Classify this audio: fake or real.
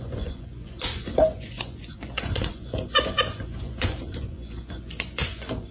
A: fake